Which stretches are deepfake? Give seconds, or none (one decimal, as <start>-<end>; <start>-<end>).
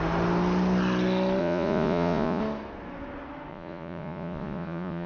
1.4-2.4; 3.5-5.1